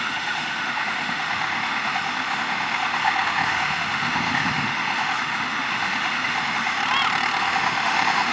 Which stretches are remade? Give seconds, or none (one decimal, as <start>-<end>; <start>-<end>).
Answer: 0.0-6.8; 7.4-8.3